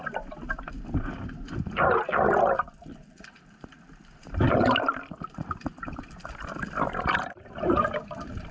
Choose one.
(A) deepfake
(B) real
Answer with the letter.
A